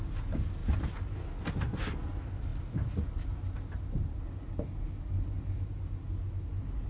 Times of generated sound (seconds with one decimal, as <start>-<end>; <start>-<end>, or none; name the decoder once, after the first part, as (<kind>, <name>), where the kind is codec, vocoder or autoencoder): none

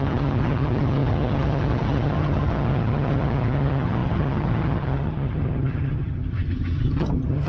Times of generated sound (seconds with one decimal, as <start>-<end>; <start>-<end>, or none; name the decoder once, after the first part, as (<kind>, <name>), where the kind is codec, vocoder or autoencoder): 0.0-7.5 (vocoder, HiFi-GAN)